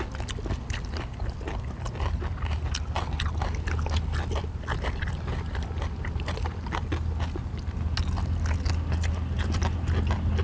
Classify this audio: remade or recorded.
recorded